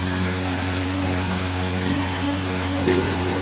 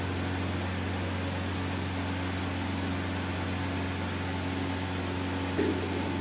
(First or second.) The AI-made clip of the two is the first